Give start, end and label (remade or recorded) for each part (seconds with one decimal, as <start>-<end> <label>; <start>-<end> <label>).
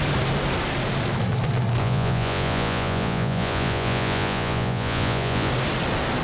0.0-1.8 recorded; 1.8-5.5 remade; 5.5-6.2 recorded